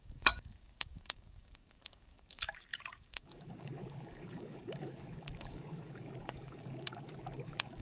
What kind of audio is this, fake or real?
fake